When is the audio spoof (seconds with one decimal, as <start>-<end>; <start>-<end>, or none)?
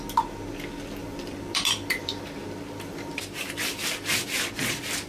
1.0-4.1